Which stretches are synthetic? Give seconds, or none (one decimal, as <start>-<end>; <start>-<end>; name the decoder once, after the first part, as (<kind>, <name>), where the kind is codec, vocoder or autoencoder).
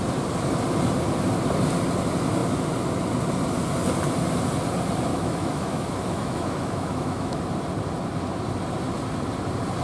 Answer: 5.1-7.4 (autoencoder, DAC-VAE)